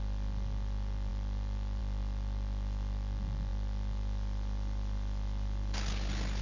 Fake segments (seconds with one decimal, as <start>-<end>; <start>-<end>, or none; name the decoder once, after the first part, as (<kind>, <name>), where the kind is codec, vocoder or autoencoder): none